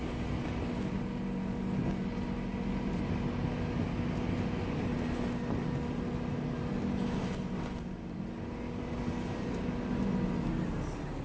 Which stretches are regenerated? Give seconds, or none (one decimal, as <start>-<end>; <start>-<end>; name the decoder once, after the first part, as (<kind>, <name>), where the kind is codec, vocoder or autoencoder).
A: none